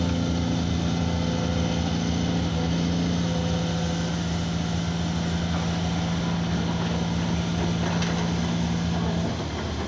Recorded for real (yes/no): yes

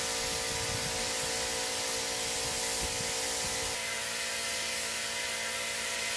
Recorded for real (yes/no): yes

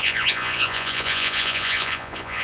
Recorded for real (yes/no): no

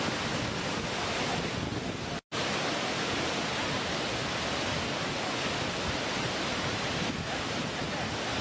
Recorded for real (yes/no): yes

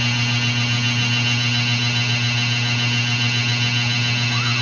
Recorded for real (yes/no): yes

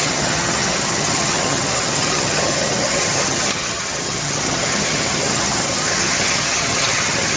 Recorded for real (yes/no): no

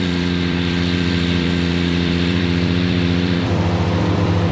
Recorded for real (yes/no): no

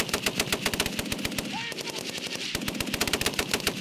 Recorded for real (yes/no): yes